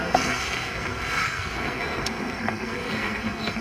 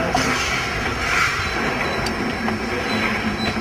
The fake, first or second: first